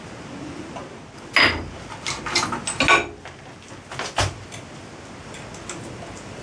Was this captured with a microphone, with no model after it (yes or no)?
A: yes